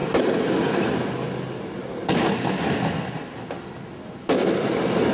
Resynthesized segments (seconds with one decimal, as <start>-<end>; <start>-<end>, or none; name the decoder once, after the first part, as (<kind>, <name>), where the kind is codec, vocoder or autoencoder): none